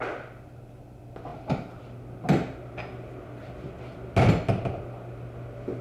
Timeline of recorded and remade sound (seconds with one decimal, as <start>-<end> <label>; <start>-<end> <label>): 0.0-1.3 recorded; 1.3-1.8 remade; 1.8-5.8 recorded